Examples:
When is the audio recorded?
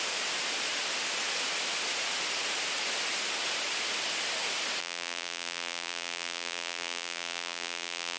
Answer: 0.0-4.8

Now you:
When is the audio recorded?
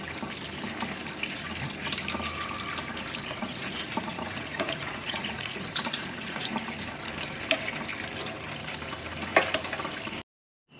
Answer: 0.0-3.2; 6.5-10.8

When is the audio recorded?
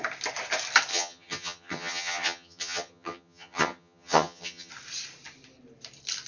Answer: 0.0-0.9; 4.7-6.3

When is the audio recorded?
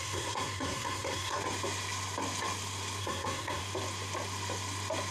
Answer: 1.4-3.0; 3.6-5.1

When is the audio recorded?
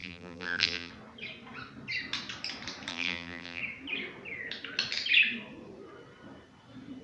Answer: 0.9-2.9; 3.6-7.0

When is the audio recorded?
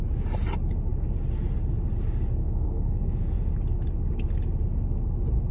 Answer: 0.0-2.4; 3.2-5.5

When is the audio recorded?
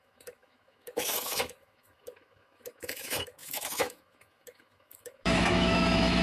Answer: none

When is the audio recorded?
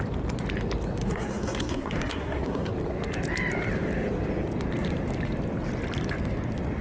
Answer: 0.0-1.0; 2.7-6.8